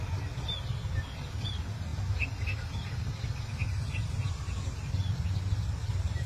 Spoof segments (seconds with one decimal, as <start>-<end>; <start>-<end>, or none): none